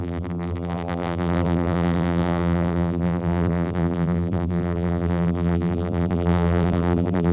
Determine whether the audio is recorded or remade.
remade